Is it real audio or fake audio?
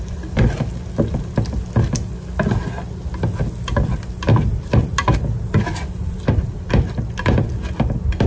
real